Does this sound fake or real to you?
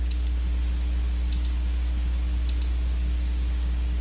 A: real